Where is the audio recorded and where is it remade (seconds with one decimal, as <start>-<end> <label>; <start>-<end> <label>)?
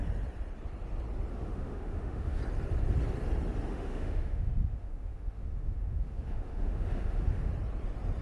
0.0-1.3 recorded; 1.3-2.4 remade; 2.4-3.7 recorded; 3.7-7.5 remade; 7.5-8.2 recorded